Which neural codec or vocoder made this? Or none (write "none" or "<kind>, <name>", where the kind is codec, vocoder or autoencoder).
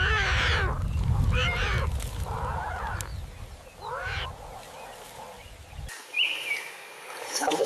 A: none